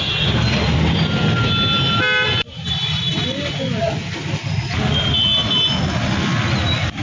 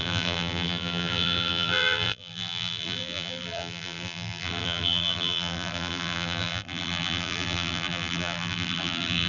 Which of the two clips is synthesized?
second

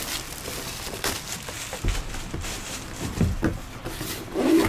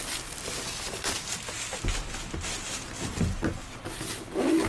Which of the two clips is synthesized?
first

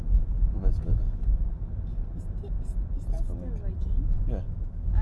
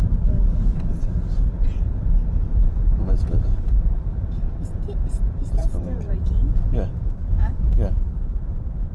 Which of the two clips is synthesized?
second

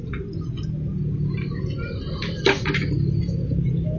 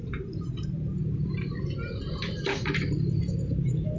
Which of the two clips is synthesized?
second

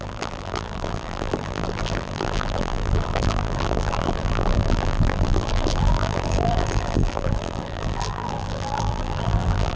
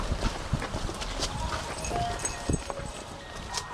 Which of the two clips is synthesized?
first